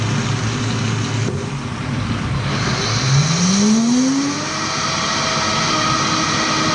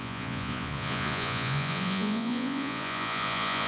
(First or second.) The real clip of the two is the first